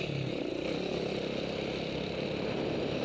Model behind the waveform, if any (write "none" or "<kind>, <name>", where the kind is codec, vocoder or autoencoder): none